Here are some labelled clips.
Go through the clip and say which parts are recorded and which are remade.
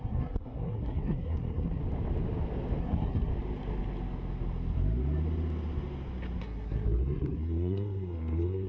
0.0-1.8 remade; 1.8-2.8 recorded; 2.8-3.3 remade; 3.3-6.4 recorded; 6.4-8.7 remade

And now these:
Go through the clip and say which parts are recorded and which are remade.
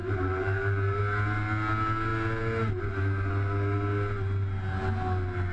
0.0-1.0 remade; 1.0-5.5 recorded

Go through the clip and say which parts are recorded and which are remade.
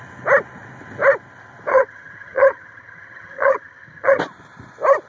0.0-1.7 recorded; 1.7-4.2 remade; 4.2-5.1 recorded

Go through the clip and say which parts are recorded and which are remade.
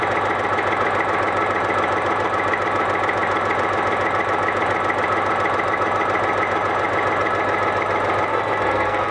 0.0-8.3 recorded; 8.3-9.1 remade